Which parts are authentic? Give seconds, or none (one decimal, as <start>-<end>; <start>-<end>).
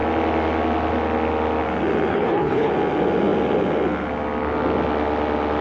0.0-2.1; 2.7-5.6